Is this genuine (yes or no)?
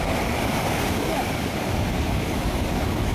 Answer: no